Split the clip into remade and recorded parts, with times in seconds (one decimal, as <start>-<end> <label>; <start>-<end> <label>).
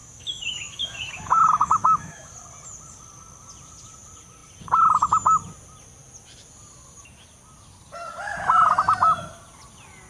0.0-2.3 remade; 2.3-10.1 recorded